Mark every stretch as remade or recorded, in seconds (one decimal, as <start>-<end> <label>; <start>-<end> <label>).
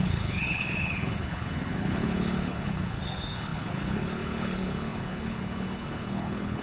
0.0-6.6 remade